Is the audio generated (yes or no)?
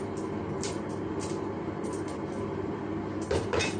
yes